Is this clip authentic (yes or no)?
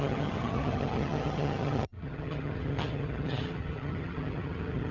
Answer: no